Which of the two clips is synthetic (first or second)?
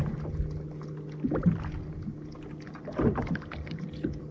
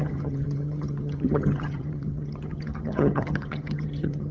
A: second